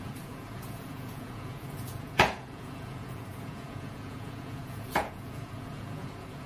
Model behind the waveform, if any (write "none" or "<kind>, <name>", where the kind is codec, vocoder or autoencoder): vocoder, Vocos